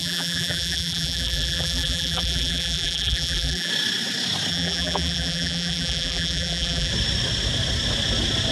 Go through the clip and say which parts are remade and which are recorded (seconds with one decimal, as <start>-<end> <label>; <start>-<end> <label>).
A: 0.0-3.7 remade; 3.7-4.5 recorded; 4.5-6.9 remade; 6.9-8.5 recorded